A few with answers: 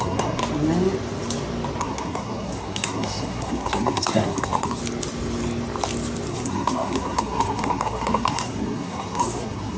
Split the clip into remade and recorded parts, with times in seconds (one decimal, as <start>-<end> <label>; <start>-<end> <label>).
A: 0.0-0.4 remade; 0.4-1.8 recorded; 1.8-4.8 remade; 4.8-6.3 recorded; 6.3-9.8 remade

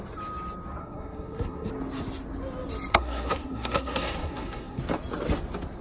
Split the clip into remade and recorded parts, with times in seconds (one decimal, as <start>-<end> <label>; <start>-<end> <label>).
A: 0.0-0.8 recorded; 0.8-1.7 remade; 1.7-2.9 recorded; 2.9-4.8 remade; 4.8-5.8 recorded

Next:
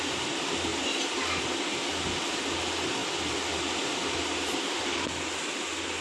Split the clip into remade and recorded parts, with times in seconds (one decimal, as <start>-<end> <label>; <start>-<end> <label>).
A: 0.0-0.7 recorded; 0.7-1.4 remade; 1.4-3.0 recorded; 3.0-3.8 remade; 3.8-6.0 recorded

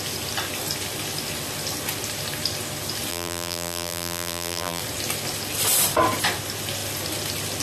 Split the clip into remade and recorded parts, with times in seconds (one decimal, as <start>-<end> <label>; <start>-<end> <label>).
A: 0.0-3.1 recorded; 3.1-4.8 remade; 4.8-7.6 recorded

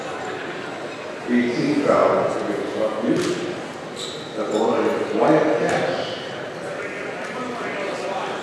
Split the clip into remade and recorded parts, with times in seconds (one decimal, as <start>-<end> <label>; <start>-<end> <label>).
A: 0.0-2.0 recorded; 2.0-3.1 remade; 3.1-8.4 recorded